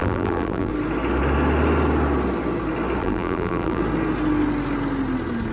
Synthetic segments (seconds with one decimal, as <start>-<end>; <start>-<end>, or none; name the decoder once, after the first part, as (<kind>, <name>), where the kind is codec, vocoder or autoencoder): 0.0-0.7 (vocoder, BigVGAN v2); 3.0-3.8